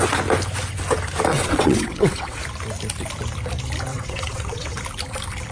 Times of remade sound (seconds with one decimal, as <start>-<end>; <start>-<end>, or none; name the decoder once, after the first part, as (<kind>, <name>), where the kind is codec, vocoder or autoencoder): 1.3-2.4 (vocoder, WaveNeXt); 3.9-4.8